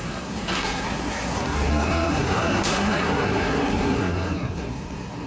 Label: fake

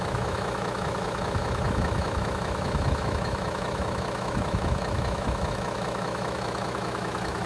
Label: fake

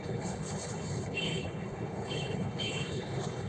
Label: fake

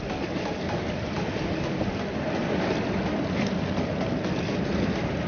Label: real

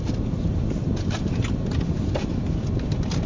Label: real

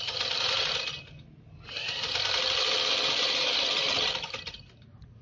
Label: real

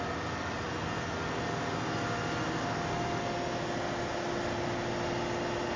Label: real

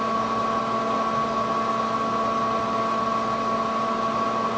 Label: real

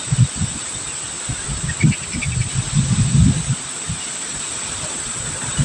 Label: real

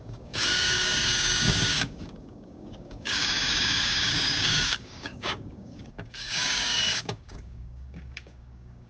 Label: fake